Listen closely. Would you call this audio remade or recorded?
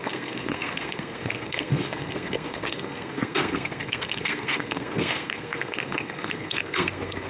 remade